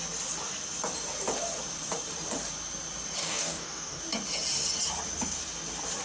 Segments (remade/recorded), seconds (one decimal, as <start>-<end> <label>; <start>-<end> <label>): 0.0-3.2 recorded; 3.2-4.0 remade; 4.0-6.0 recorded